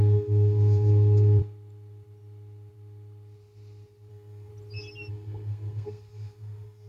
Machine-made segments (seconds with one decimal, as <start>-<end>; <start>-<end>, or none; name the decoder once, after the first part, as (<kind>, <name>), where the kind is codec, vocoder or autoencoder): 0.0-1.4 (codec, SNAC); 4.1-4.5; 5.1-6.9